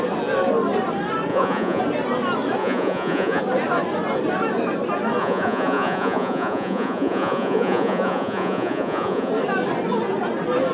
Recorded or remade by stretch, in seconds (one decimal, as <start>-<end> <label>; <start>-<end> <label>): 0.0-1.3 recorded; 1.3-1.8 remade; 1.8-2.6 recorded; 2.6-3.4 remade; 3.4-5.2 recorded; 5.2-9.3 remade; 9.3-10.7 recorded